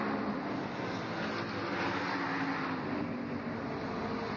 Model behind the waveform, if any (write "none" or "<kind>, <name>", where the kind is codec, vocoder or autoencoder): none